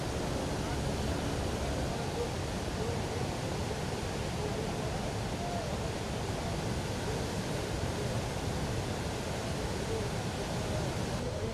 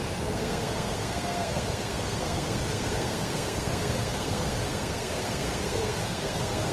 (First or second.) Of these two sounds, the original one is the first